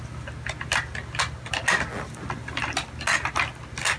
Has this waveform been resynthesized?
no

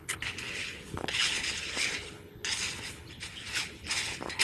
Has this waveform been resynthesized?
yes